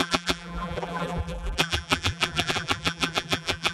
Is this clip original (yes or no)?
no